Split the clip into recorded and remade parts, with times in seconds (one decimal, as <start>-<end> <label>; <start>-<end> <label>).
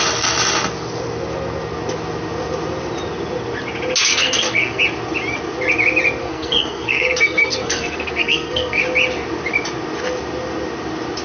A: 0.0-4.1 recorded; 4.1-4.8 remade; 4.8-6.2 recorded; 6.2-8.8 remade; 8.8-11.2 recorded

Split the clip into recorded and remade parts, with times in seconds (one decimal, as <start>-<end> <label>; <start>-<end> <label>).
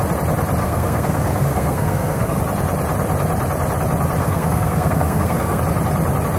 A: 0.0-0.6 recorded; 0.6-2.4 remade; 2.4-4.2 recorded; 4.2-5.6 remade; 5.6-6.4 recorded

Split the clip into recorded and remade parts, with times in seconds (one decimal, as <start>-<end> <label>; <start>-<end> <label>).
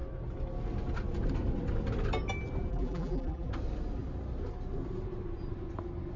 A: 0.0-2.7 recorded; 2.7-3.5 remade; 3.5-6.2 recorded